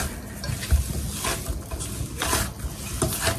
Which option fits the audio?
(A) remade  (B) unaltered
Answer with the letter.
B